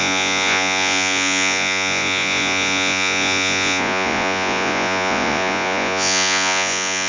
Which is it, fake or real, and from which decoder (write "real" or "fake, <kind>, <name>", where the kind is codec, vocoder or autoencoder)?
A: fake, vocoder, Vocos